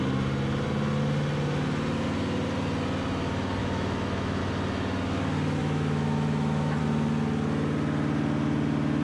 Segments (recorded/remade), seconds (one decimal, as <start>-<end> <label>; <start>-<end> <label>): 0.0-3.6 recorded; 3.6-4.4 remade; 4.4-5.6 recorded; 5.6-6.8 remade; 6.8-9.0 recorded